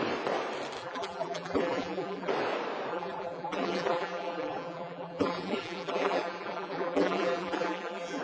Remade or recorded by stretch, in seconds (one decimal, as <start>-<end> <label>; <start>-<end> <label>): 0.0-0.8 recorded; 0.8-2.3 remade; 2.3-2.9 recorded; 2.9-8.2 remade